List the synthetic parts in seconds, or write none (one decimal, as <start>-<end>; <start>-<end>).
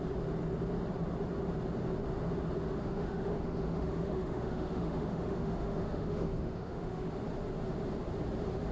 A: 2.8-7.1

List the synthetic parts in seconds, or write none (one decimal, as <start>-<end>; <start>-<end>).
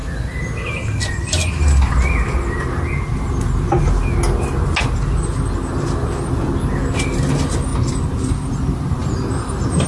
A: none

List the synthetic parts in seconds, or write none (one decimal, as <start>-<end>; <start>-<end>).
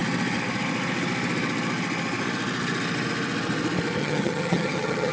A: 4.0-5.1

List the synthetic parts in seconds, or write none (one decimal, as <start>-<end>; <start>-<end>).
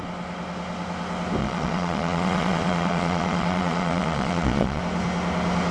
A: 1.4-4.8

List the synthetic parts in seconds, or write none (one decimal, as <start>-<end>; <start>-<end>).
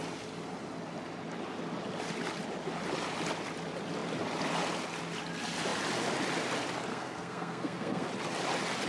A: 6.9-8.1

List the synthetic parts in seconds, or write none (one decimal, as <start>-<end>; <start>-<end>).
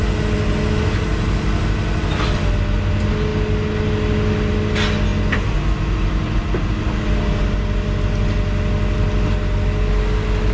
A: none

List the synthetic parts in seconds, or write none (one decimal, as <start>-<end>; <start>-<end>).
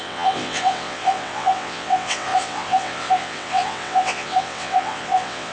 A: 0.0-5.5